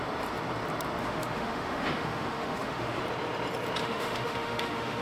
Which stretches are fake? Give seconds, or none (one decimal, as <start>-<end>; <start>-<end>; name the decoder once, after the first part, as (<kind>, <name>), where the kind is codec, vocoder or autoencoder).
1.0-3.0 (autoencoder, DAC-VAE); 3.8-5.0